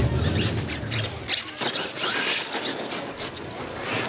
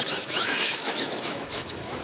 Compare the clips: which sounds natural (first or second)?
first